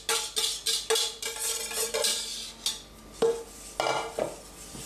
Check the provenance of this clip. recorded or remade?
recorded